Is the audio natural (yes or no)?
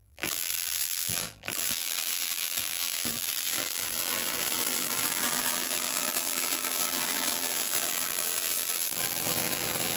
no